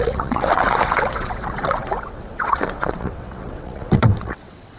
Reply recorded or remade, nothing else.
remade